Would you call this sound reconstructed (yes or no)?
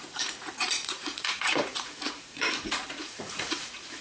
yes